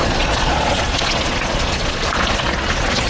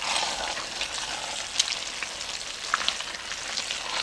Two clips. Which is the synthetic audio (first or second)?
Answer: first